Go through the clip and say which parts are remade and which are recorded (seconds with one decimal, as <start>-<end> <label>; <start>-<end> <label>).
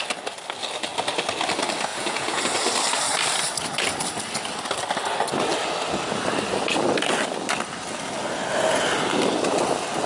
0.0-1.9 recorded; 1.9-2.4 remade; 2.4-10.1 recorded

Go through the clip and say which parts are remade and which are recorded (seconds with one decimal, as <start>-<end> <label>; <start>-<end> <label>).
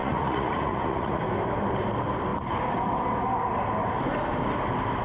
0.0-1.2 remade; 1.2-5.0 recorded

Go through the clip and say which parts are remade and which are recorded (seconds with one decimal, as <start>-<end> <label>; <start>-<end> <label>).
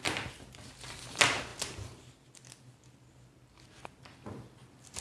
0.0-5.0 recorded